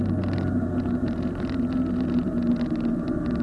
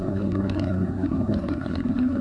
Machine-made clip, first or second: second